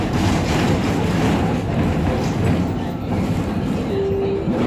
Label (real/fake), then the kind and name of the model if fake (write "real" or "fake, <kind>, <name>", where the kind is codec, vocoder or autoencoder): real